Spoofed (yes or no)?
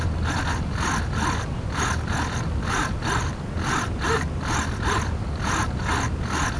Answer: no